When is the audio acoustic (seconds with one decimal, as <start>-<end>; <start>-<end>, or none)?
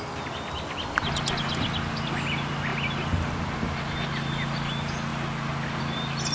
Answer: 0.0-6.3